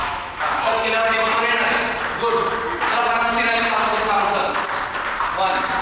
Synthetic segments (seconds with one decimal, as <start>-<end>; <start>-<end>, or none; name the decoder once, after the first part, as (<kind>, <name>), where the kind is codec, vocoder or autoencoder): 0.0-0.7 (autoencoder, DAC-VAE)